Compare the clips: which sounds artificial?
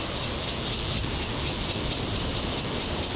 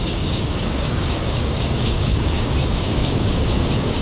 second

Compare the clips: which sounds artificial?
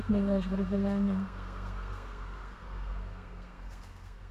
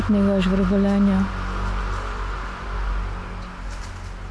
first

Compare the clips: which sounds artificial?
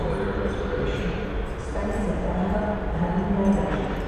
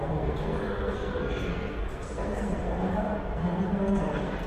second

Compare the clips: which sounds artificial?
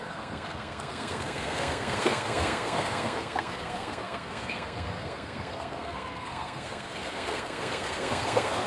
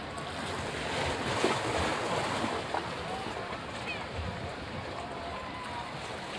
first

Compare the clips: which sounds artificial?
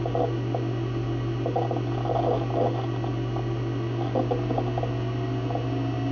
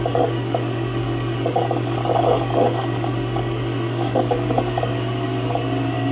second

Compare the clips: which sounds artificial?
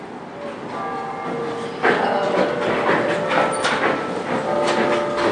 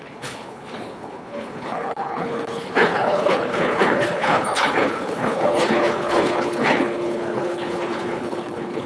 second